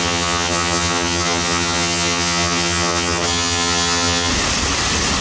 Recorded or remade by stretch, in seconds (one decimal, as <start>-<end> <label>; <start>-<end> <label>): 0.0-4.3 remade; 4.3-5.2 recorded